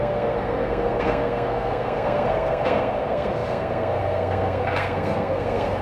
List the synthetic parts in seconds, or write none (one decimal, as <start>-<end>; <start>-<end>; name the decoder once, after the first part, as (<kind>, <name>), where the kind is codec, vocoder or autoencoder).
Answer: 0.0-5.8 (codec, SNAC)